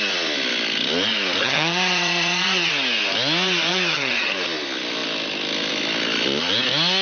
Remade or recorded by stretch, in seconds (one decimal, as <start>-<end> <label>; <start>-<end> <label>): 0.0-1.4 recorded; 1.4-2.7 remade; 2.7-3.7 recorded; 3.7-4.3 remade; 4.3-7.0 recorded